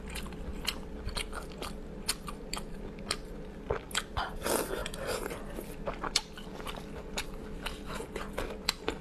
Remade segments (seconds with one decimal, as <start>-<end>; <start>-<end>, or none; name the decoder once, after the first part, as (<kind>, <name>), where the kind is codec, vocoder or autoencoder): none